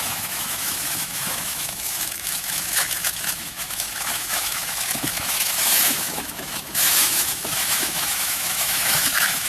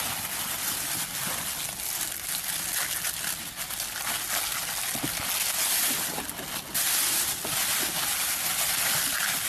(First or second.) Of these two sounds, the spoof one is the first